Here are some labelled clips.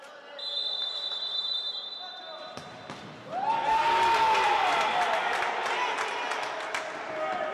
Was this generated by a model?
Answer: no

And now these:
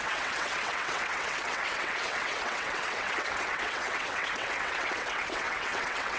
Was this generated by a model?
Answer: yes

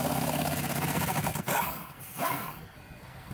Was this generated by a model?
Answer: yes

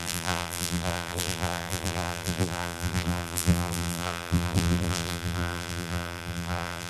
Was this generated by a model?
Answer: yes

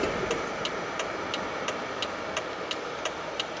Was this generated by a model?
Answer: no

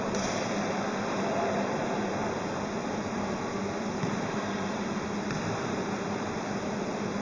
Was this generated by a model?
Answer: yes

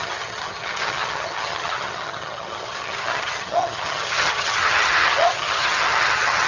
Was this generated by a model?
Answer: yes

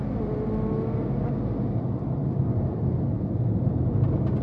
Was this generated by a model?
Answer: no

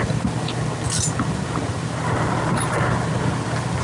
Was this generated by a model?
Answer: no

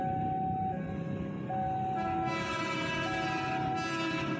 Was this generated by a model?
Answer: no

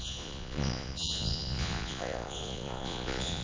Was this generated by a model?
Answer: yes